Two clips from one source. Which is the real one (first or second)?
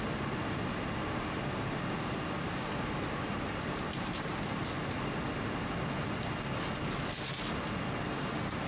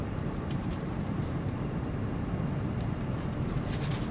first